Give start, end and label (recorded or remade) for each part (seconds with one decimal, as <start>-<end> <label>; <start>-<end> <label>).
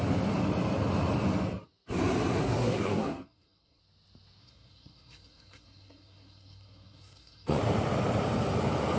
0.0-2.4 recorded; 2.4-3.8 remade; 3.8-4.4 recorded; 4.4-7.6 remade; 7.6-9.0 recorded